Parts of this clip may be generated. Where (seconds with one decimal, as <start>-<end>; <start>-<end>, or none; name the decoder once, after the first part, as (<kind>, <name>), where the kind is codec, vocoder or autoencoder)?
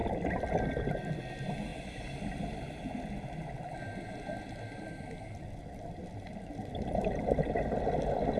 none